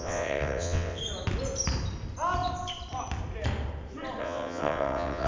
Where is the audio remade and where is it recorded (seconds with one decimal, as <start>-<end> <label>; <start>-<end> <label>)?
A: 0.0-1.0 remade; 1.0-4.2 recorded; 4.2-5.3 remade